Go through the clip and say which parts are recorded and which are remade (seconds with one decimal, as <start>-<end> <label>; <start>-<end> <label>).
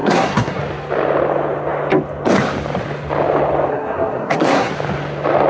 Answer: 0.0-0.6 remade; 0.6-3.7 recorded; 3.7-4.7 remade; 4.7-5.5 recorded